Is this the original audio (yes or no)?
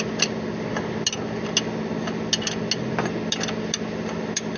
yes